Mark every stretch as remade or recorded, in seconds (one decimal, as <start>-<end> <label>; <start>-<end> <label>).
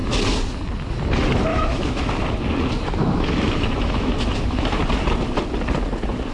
0.0-1.5 recorded; 1.5-2.1 remade; 2.1-3.0 recorded; 3.0-4.8 remade; 4.8-6.3 recorded